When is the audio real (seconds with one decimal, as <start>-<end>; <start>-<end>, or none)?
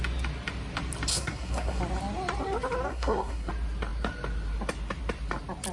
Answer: 0.0-1.1; 1.8-2.9; 3.5-5.7